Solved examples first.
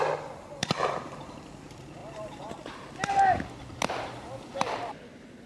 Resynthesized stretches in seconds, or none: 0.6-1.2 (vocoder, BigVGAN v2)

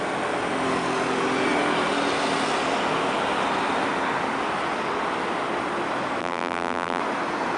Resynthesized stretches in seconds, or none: 6.2-7.0 (vocoder, BigVGAN v2)

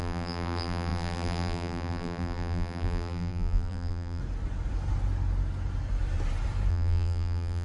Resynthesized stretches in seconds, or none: 0.0-4.2 (vocoder, BigVGAN v2); 6.7-7.6

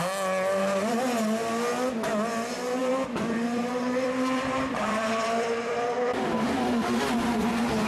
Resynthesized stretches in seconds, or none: 2.8-7.0 (vocoder, BigVGAN v2)

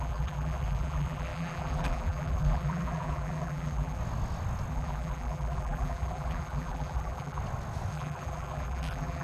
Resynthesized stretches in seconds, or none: 0.0-4.0 (vocoder, BigVGAN v2); 4.7-7.4; 7.9-9.2

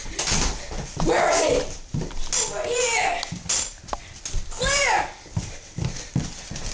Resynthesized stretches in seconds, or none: 0.6-2.2 (vocoder, BigVGAN v2); 4.5-6.7

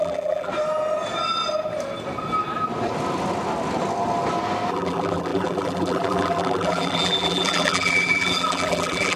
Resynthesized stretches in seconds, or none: 0.0-0.5 (vocoder, BigVGAN v2); 4.7-9.2